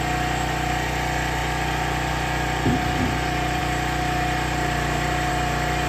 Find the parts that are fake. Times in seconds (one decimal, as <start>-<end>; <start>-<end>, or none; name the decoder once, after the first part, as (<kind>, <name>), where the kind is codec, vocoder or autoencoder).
none